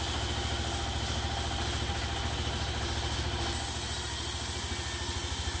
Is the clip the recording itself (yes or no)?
yes